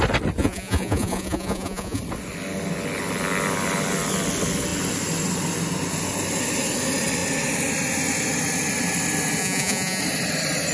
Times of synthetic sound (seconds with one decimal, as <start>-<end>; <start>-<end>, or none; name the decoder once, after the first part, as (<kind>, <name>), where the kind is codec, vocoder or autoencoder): 0.4-2.0 (vocoder, Vocos); 9.4-10.0